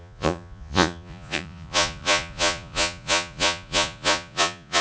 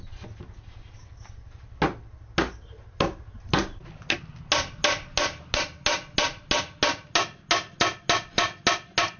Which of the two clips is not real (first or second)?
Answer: first